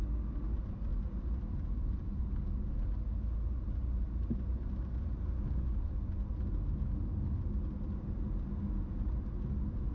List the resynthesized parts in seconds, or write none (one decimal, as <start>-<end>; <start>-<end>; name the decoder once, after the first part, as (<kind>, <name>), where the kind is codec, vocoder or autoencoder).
0.9-2.2 (vocoder, BigVGAN v2); 3.8-5.2